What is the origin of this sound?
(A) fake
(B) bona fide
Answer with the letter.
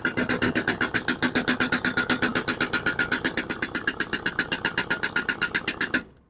B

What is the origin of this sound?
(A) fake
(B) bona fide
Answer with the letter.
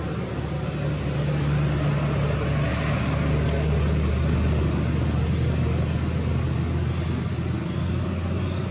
B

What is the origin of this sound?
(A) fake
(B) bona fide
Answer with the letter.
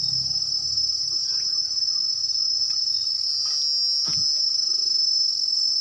B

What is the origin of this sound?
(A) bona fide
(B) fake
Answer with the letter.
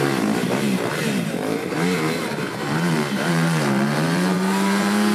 B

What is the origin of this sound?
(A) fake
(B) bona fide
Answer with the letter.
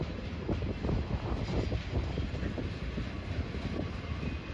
B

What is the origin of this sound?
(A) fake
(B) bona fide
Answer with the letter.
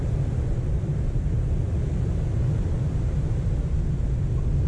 B